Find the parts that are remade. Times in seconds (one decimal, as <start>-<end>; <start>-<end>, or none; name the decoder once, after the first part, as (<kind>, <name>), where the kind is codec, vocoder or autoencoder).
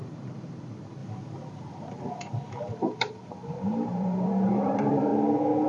0.0-1.0 (vocoder, BigVGAN v2); 2.7-5.1